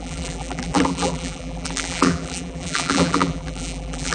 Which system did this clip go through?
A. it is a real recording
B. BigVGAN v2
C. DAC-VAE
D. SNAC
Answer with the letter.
B